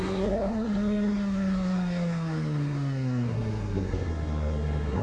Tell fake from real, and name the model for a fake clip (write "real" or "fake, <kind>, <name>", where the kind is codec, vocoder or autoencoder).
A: fake, codec, SNAC